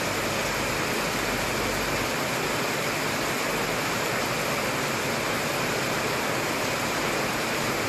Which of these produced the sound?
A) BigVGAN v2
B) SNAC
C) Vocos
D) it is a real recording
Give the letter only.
D